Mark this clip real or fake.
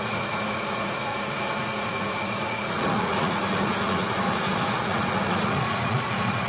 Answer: fake